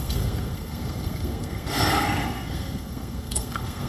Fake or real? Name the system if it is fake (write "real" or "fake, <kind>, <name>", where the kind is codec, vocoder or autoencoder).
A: fake, codec, SNAC